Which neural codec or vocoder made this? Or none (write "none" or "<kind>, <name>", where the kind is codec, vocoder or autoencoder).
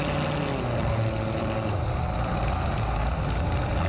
none